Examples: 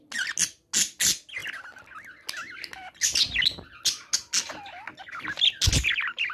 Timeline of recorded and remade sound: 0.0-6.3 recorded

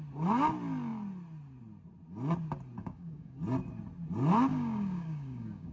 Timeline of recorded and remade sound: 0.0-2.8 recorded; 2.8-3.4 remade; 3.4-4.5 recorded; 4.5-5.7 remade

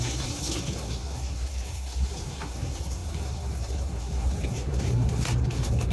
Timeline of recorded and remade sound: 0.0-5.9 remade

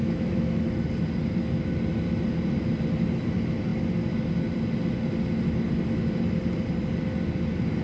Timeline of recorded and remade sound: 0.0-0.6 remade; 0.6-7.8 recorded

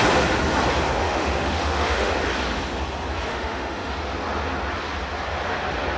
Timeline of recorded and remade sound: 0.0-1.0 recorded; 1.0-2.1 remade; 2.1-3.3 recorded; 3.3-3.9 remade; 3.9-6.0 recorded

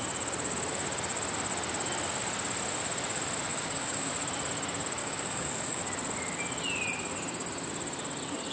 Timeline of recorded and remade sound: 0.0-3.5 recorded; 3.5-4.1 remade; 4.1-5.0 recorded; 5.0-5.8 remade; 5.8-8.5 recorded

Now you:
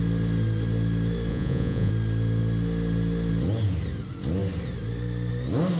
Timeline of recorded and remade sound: 0.0-1.3 recorded; 1.3-1.9 remade; 1.9-5.8 recorded

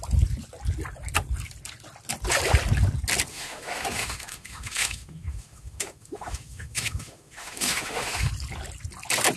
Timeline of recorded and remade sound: 0.0-3.3 recorded; 3.3-8.3 remade; 8.3-9.4 recorded